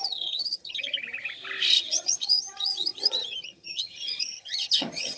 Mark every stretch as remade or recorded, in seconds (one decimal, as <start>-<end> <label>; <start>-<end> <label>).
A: 0.0-0.9 remade; 0.9-1.7 recorded; 1.7-5.2 remade